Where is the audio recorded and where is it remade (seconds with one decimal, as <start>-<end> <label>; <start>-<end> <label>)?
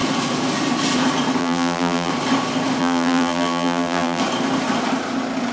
0.0-1.4 recorded; 1.4-2.1 remade; 2.1-2.8 recorded; 2.8-4.2 remade; 4.2-5.5 recorded